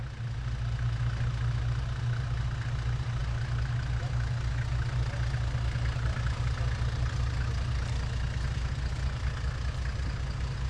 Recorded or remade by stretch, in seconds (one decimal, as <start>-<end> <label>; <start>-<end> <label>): 0.0-10.7 recorded